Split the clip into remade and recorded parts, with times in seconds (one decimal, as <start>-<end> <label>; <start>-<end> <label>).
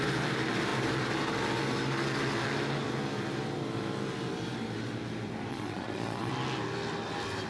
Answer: 0.0-5.5 recorded; 5.5-6.3 remade; 6.3-7.5 recorded